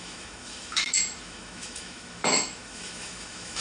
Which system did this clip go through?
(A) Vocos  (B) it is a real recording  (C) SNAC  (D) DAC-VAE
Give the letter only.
D